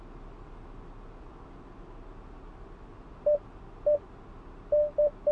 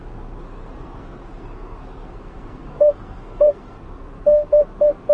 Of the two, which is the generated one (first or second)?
second